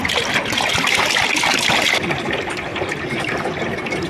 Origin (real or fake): real